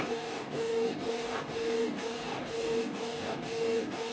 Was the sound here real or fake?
fake